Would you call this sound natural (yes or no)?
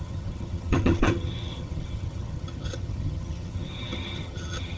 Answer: no